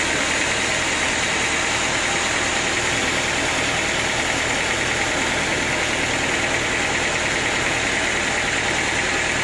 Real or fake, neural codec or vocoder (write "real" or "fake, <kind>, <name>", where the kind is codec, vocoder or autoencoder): real